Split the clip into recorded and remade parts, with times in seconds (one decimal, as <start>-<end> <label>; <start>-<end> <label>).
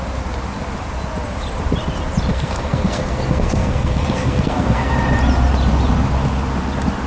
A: 0.0-2.3 recorded; 2.3-4.9 remade; 4.9-7.1 recorded